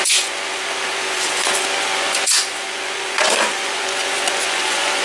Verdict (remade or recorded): remade